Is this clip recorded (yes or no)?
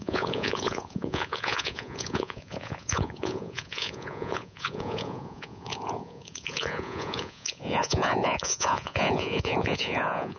no